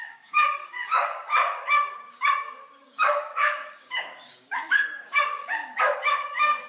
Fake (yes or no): yes